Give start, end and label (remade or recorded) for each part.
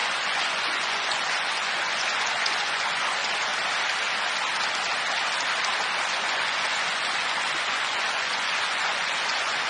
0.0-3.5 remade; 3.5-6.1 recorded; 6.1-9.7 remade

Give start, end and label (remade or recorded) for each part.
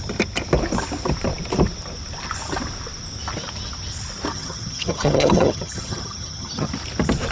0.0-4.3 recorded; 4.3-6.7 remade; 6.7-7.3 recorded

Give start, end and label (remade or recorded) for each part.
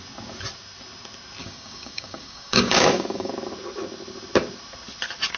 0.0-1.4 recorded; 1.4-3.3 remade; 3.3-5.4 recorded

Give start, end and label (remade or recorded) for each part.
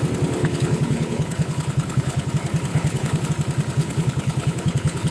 0.0-0.4 recorded; 0.4-2.3 remade; 2.3-2.7 recorded; 2.7-3.3 remade; 3.3-3.8 recorded; 3.8-5.1 remade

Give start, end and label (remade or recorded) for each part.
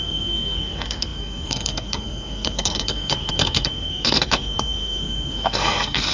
0.0-6.1 remade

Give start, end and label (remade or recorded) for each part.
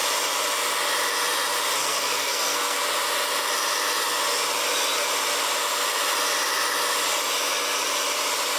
0.0-1.8 recorded; 1.8-2.8 remade; 2.8-8.6 recorded